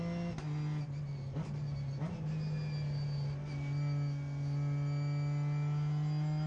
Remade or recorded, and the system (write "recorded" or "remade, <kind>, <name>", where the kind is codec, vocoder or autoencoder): recorded